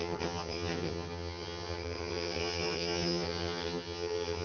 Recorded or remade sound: remade